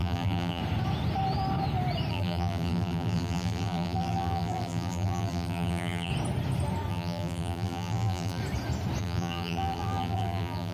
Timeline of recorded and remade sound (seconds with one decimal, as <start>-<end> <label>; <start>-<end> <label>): 0.0-0.6 remade; 0.6-2.1 recorded; 2.1-6.1 remade; 6.1-6.9 recorded; 6.9-8.4 remade; 8.4-9.0 recorded; 9.0-10.7 remade